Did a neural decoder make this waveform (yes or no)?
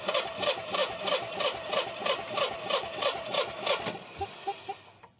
no